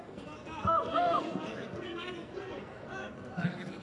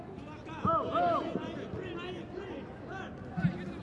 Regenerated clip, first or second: first